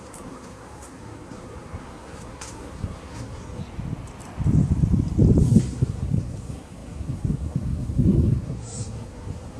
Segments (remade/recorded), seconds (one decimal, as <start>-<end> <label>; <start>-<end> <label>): 0.0-3.6 remade; 3.6-5.4 recorded; 5.4-9.6 remade